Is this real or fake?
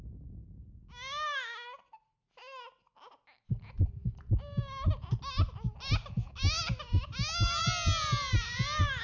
real